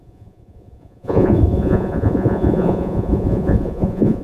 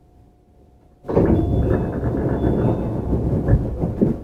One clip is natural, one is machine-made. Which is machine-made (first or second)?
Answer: first